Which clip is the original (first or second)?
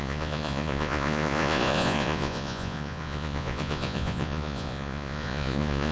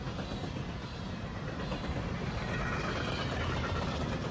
second